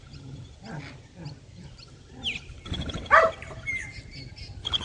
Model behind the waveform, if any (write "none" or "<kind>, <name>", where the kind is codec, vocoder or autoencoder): none